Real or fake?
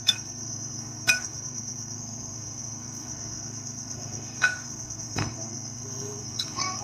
fake